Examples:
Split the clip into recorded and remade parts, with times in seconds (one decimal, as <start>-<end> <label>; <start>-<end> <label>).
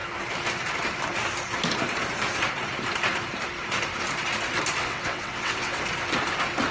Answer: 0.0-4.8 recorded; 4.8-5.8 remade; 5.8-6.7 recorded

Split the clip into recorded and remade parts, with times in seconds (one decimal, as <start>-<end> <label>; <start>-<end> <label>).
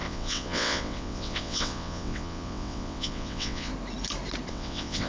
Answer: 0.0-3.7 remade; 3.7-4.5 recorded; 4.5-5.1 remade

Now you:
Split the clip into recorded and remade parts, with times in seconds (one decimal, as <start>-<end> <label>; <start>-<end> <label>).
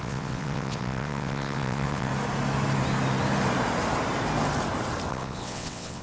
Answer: 0.0-2.1 remade; 2.1-5.1 recorded; 5.1-6.0 remade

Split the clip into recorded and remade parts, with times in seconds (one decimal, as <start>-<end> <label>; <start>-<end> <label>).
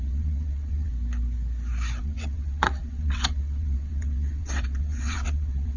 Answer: 0.0-0.9 remade; 0.9-2.0 recorded; 2.0-5.8 remade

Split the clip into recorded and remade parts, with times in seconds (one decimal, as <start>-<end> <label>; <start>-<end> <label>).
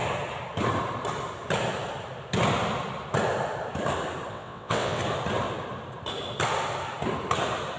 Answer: 0.0-4.3 recorded; 4.3-5.0 remade; 5.0-7.8 recorded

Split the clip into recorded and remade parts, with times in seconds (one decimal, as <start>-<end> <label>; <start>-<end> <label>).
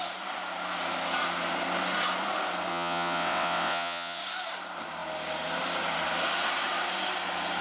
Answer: 0.0-2.7 recorded; 2.7-4.2 remade; 4.2-7.6 recorded